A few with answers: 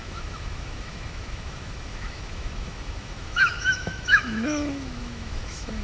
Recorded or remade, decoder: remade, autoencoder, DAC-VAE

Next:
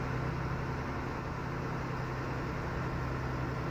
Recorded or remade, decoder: recorded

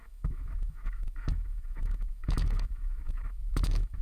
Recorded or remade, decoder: remade, autoencoder, DAC-VAE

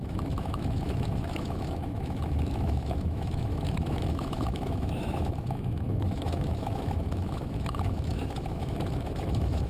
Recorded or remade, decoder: remade, autoencoder, DAC-VAE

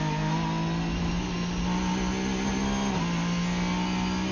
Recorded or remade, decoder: recorded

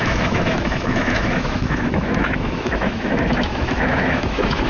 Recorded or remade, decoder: remade, autoencoder, DAC-VAE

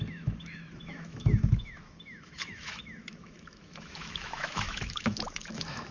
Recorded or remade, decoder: remade, autoencoder, DAC-VAE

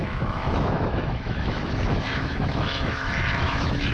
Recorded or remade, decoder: remade, autoencoder, DAC-VAE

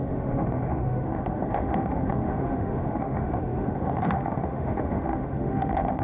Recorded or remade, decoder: remade, autoencoder, DAC-VAE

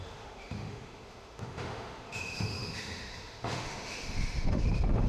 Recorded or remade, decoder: remade, autoencoder, DAC-VAE